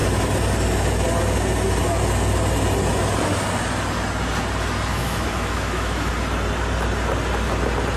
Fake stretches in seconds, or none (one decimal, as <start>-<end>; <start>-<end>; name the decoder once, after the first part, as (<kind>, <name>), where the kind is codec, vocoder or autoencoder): 4.9-6.1 (autoencoder, DAC-VAE)